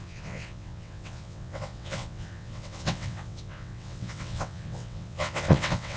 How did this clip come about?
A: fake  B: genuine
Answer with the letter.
A